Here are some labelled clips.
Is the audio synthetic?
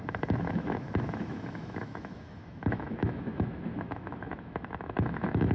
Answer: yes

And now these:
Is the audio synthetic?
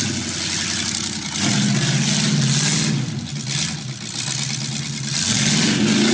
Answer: no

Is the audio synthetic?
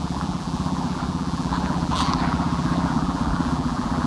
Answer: yes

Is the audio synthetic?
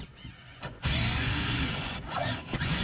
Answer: yes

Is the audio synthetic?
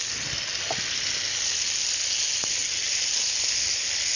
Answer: no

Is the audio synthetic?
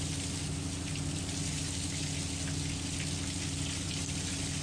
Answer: no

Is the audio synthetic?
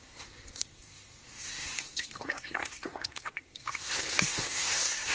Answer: yes